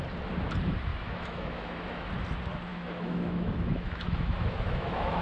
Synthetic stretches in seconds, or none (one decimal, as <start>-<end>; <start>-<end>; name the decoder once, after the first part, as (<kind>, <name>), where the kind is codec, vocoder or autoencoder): 0.9-2.1 (autoencoder, DAC-VAE); 2.7-5.2

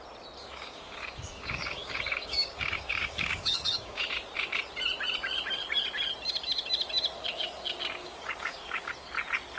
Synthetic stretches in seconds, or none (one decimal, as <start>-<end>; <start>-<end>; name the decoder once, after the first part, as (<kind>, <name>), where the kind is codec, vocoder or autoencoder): 0.4-4.1 (codec, DAC); 8.0-8.9